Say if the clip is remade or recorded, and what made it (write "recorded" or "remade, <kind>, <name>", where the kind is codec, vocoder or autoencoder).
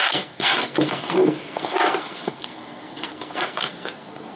remade, codec, SNAC